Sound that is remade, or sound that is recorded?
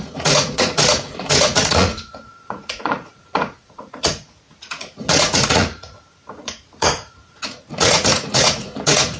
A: remade